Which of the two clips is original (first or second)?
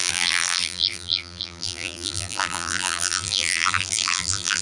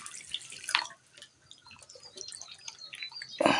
second